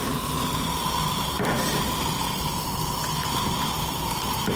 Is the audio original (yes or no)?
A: yes